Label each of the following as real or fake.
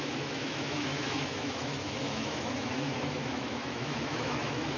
fake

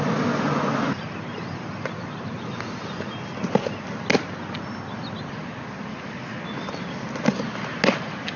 real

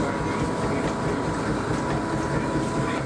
real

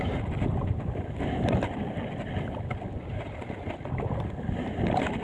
real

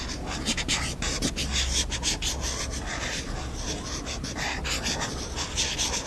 real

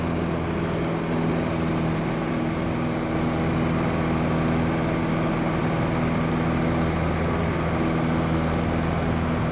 real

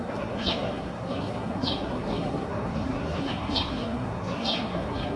fake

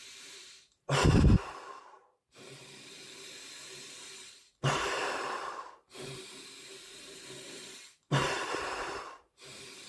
fake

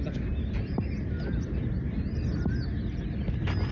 real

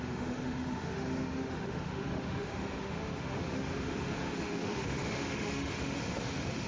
fake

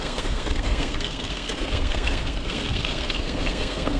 fake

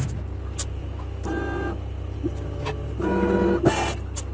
real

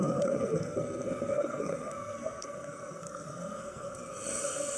fake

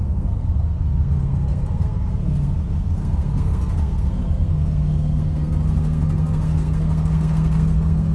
fake